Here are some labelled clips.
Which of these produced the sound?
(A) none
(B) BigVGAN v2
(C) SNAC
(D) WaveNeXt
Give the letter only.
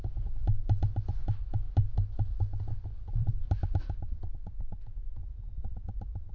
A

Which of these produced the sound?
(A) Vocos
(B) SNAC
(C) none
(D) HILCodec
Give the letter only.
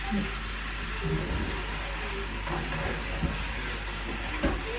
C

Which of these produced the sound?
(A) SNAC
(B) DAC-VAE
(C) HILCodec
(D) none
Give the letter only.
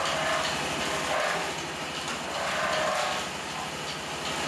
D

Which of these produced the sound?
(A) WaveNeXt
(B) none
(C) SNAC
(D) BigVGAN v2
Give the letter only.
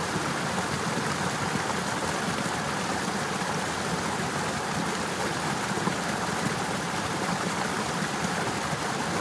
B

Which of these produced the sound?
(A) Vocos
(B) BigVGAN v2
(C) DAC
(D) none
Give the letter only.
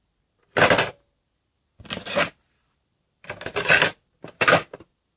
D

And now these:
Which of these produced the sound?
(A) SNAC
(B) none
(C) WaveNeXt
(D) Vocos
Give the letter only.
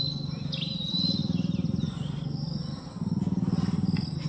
B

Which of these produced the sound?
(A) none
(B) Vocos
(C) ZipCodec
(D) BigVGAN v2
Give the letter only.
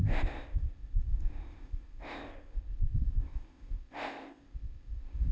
C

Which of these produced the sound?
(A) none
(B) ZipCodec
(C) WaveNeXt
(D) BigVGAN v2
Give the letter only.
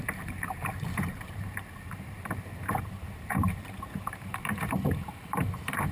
D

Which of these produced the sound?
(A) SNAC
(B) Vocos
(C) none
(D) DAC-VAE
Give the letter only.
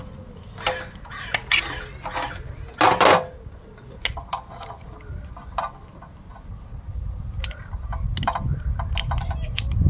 C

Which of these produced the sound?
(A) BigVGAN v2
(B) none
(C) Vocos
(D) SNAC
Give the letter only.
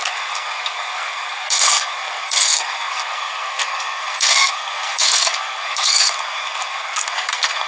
D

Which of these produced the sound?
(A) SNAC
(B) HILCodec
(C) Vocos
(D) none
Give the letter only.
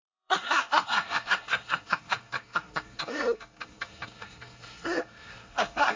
A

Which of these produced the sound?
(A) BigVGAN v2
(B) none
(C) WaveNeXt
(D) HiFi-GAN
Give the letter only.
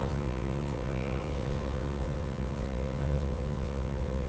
C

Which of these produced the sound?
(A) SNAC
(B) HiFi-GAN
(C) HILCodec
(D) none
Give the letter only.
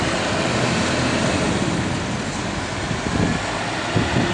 D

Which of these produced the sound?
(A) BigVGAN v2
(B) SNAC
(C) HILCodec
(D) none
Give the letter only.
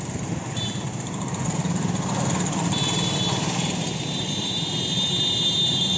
A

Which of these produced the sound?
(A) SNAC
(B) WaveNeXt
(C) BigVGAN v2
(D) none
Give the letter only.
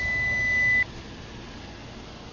D